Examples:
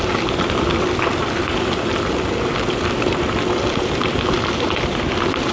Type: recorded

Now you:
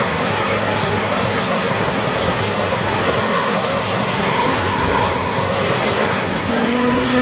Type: remade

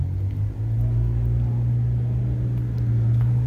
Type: recorded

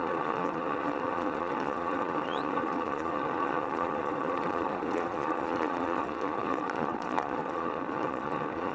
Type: remade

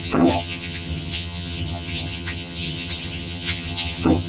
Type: remade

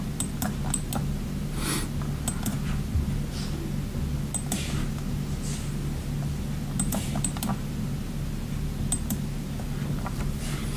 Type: recorded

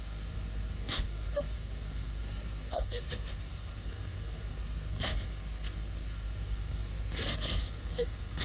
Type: remade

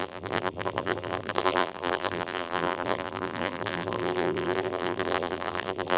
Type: remade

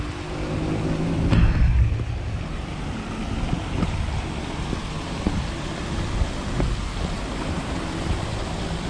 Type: recorded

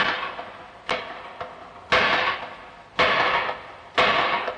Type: recorded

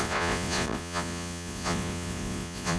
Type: remade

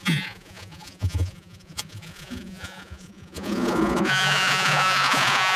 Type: remade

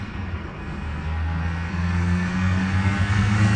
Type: remade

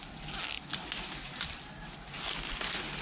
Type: recorded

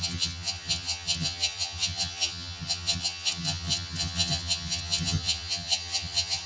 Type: remade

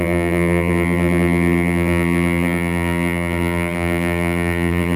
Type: remade